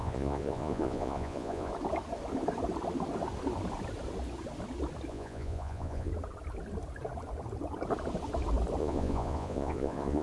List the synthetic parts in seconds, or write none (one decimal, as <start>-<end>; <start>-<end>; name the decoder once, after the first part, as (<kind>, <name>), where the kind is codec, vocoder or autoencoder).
0.0-1.7 (vocoder, Vocos); 5.1-6.1; 8.8-10.2